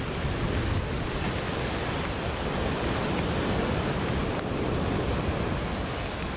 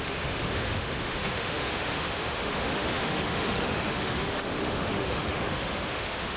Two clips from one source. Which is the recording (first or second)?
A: first